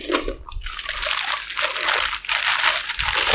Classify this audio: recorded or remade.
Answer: recorded